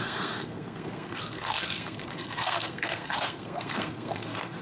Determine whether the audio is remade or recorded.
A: remade